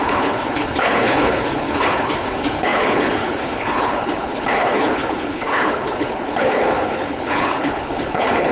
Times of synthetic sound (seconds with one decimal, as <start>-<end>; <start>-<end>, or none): 0.0-8.5